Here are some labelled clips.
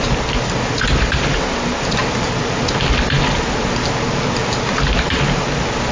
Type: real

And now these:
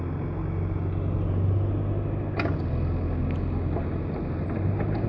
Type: real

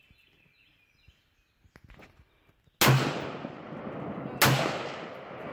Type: real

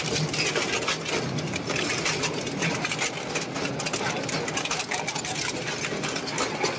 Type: real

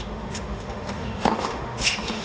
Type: fake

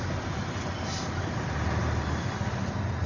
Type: real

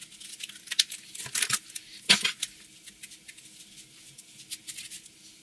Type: real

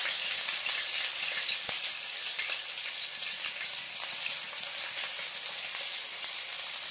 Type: fake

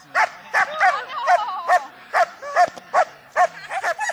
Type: real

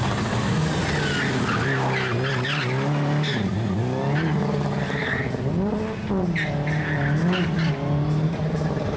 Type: real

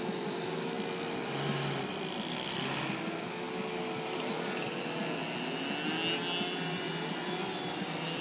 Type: real